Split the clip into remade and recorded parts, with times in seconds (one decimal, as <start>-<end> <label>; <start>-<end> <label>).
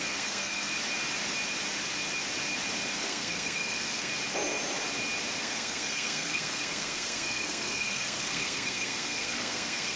0.0-0.7 remade; 0.7-3.0 recorded; 3.0-4.1 remade; 4.1-5.4 recorded; 5.4-10.0 remade